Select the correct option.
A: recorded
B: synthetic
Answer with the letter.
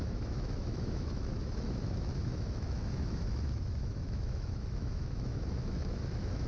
B